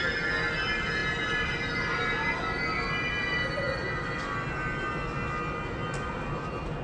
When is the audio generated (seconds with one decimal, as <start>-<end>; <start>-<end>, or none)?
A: none